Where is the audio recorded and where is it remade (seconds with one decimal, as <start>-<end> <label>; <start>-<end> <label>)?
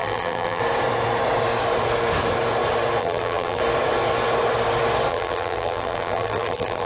0.0-0.6 remade; 0.6-3.0 recorded; 3.0-3.6 remade; 3.6-5.1 recorded; 5.1-6.9 remade